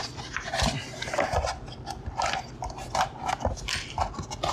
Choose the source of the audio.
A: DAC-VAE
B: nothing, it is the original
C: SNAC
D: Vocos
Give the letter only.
B